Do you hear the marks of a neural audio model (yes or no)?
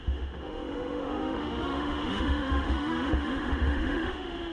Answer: yes